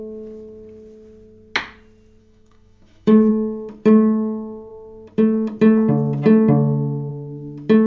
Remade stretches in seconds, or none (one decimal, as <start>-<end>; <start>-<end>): 2.2-3.3